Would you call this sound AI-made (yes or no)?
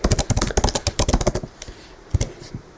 no